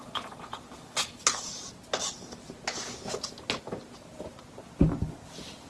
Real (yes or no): yes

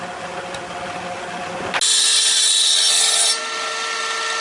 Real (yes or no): yes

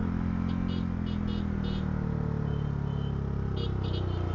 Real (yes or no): yes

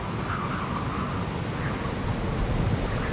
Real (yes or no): yes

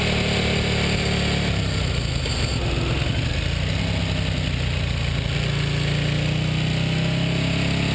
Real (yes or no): yes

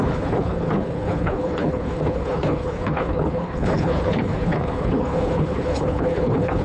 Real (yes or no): no